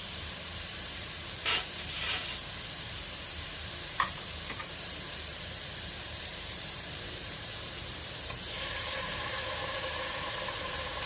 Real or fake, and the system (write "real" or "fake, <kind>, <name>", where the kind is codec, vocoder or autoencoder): fake, vocoder, BigVGAN v2